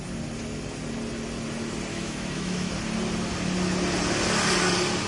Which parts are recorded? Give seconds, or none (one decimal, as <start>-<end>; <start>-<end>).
0.0-1.9; 2.7-5.1